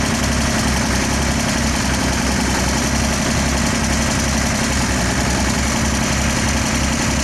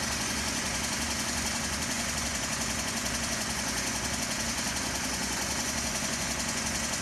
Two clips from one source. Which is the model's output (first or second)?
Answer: second